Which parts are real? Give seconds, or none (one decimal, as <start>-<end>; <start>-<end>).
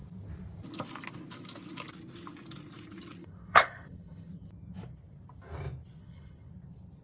0.0-3.2; 4.3-6.0; 6.5-7.0